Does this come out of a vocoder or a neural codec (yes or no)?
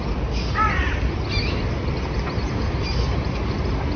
no